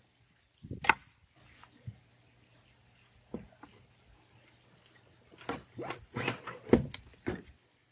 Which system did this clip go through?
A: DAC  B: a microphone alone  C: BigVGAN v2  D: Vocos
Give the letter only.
B